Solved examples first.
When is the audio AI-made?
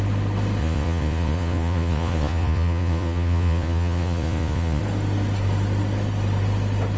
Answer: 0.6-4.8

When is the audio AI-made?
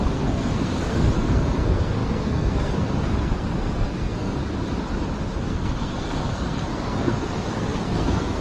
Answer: 0.0-4.4; 5.4-8.4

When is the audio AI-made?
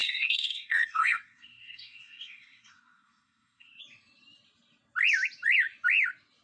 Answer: 0.0-3.8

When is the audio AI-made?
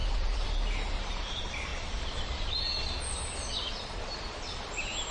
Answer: 0.0-0.6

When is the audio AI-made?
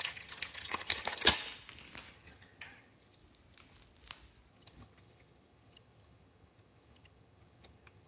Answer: 0.0-1.4; 2.1-3.2; 4.5-8.1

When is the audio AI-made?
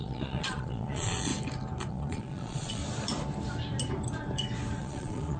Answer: 0.0-1.3; 1.9-2.8; 4.8-5.4